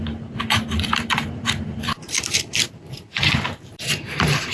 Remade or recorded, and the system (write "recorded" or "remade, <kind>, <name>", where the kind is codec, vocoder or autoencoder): remade, vocoder, BigVGAN v2